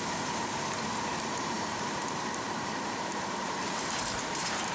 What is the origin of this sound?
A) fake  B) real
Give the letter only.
A